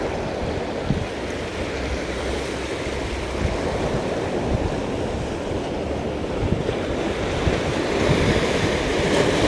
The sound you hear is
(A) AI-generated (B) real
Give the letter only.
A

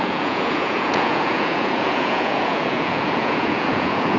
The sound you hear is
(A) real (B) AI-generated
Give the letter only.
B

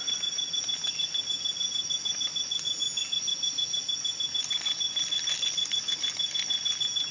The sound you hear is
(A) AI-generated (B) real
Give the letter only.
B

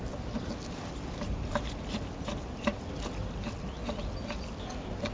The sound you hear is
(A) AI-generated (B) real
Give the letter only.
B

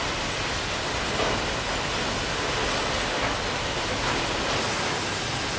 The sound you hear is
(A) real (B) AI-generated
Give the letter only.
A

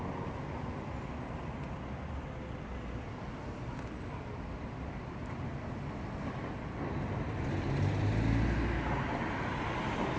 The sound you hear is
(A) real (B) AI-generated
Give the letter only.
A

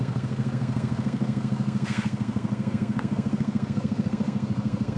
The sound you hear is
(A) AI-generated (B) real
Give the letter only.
A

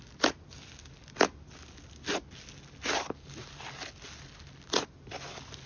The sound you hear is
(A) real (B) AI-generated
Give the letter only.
A